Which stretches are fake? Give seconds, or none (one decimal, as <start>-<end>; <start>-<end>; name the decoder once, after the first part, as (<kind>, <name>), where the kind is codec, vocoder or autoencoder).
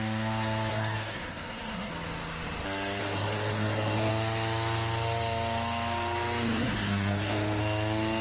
0.7-1.9 (codec, SNAC); 3.0-4.1; 6.6-7.6